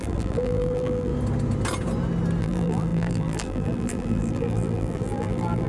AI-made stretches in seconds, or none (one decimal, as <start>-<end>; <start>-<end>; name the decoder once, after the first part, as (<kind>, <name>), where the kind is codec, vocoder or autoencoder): 0.0-1.1 (vocoder, BigVGAN v2); 2.4-5.7

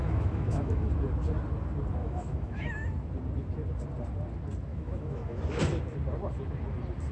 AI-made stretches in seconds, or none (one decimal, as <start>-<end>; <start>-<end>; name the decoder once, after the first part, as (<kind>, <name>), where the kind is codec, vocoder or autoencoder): 0.0-0.9 (autoencoder, DAC-VAE); 2.0-2.7; 4.7-5.4

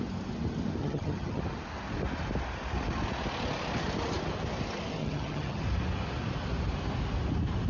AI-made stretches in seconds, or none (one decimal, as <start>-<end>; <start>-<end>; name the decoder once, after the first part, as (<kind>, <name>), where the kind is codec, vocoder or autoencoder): 0.8-1.4 (vocoder, HiFi-GAN); 5.0-5.6

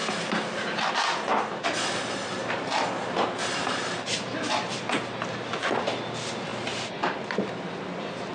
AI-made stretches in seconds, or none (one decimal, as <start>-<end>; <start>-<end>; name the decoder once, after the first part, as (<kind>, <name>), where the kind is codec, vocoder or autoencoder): 0.0-0.9 (vocoder, BigVGAN v2); 2.4-2.9; 3.4-5.2; 6.5-8.3

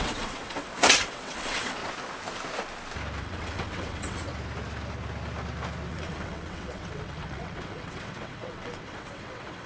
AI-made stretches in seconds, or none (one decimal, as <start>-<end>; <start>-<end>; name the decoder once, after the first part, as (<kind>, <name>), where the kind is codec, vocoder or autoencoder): 0.0-1.8 (vocoder, WaveNeXt); 3.2-4.3; 5.9-9.7

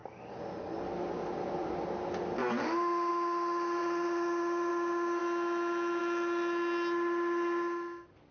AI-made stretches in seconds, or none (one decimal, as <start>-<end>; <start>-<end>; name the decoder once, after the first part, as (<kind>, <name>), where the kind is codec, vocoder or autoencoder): 3.8-4.7 (vocoder, Vocos)

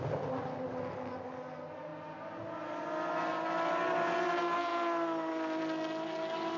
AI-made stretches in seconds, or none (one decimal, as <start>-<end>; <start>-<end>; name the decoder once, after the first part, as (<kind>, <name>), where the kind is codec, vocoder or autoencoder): none

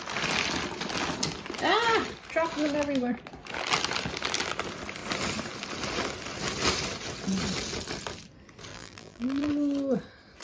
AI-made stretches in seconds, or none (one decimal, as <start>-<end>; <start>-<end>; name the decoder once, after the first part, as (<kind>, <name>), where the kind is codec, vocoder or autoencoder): 8.7-9.5 (vocoder, BigVGAN v2)